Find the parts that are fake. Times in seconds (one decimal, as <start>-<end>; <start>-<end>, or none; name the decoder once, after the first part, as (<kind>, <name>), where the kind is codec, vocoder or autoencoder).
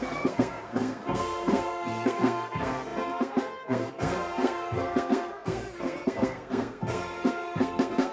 0.0-8.1 (codec, SNAC)